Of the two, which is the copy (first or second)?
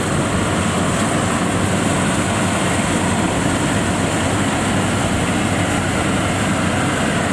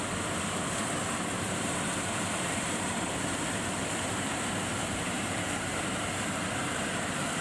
second